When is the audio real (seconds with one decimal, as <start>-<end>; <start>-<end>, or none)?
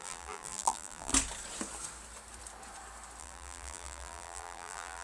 1.1-3.2